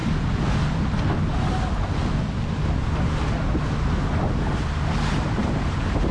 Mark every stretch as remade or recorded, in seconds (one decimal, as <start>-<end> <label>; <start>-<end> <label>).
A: 0.0-5.4 recorded; 5.4-6.1 remade